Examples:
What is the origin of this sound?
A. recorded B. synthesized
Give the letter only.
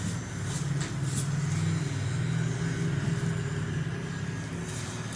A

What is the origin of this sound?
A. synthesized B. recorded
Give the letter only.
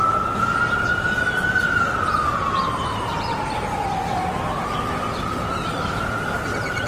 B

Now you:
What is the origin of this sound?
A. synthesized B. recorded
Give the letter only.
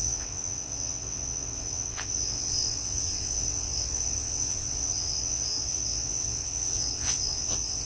A